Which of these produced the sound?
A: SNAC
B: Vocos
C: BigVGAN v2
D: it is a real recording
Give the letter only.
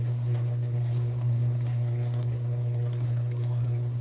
A